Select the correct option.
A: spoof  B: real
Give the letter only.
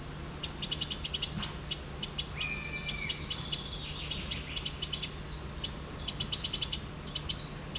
B